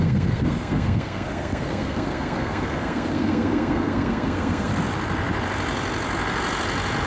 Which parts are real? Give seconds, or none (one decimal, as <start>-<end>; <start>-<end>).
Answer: 4.7-7.1